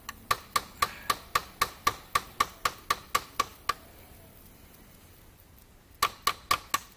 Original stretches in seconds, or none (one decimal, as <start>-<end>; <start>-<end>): 0.0-7.0